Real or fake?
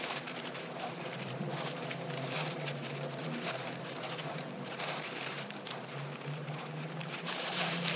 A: fake